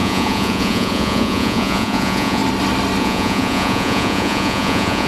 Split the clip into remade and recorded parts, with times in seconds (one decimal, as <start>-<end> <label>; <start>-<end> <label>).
0.0-2.4 remade; 2.4-3.0 recorded; 3.0-5.1 remade